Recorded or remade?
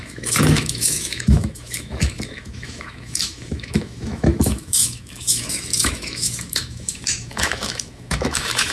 remade